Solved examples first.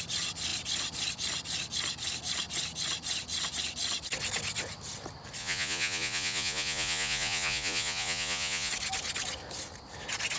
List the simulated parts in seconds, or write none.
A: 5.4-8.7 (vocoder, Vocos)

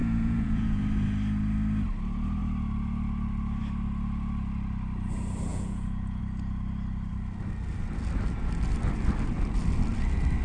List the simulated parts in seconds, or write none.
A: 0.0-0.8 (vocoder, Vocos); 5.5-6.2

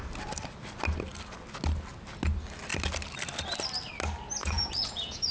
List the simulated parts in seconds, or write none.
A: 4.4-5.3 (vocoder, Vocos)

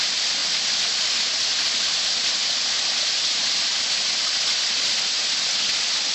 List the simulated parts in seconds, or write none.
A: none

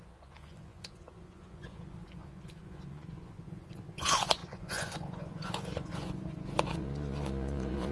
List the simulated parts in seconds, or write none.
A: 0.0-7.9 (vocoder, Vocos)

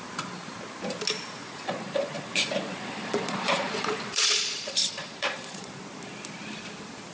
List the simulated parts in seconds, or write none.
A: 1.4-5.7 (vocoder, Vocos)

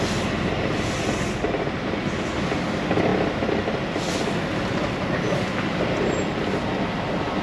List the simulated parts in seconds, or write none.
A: none